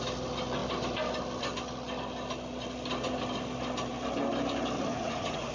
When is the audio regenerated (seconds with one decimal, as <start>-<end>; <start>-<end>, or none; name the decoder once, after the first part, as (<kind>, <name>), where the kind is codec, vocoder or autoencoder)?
4.9-5.5 (vocoder, Vocos)